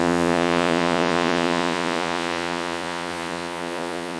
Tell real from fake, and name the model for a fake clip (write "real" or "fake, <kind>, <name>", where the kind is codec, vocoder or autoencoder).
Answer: fake, vocoder, Vocos